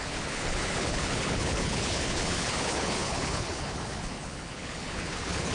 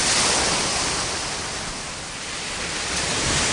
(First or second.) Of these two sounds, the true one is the second